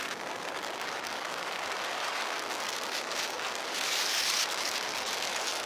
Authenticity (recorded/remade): remade